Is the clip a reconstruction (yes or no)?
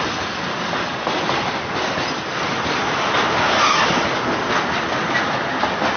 no